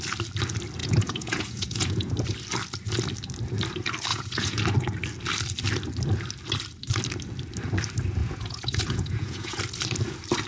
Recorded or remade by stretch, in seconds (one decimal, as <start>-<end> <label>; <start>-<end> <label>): 0.0-0.8 recorded; 0.8-2.1 remade; 2.1-4.1 recorded; 4.1-4.6 remade; 4.6-8.2 recorded; 8.2-9.6 remade; 9.6-10.5 recorded